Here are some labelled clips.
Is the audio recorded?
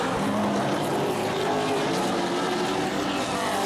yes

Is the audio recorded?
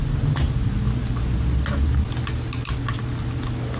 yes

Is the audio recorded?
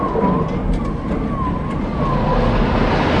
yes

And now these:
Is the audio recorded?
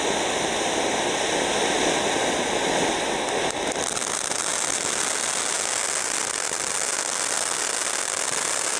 yes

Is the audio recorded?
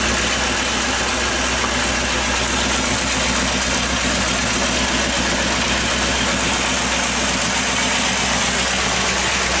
yes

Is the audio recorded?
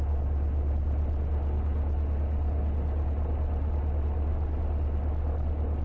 yes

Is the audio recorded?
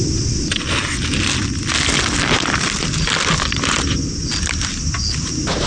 yes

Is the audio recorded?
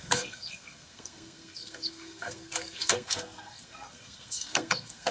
no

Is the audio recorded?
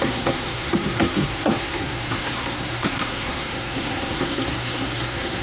no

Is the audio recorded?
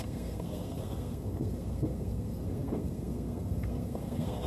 no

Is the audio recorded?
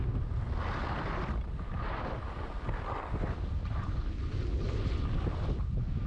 yes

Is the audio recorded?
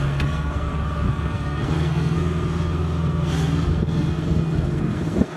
no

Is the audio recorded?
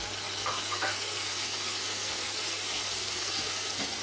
no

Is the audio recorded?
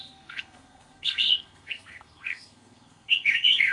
no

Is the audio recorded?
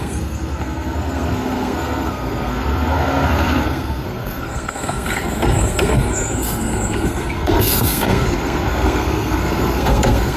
no